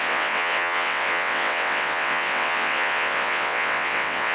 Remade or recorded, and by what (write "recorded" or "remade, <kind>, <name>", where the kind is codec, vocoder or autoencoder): remade, vocoder, WaveNeXt